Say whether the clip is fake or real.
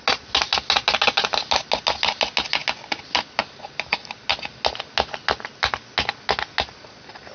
real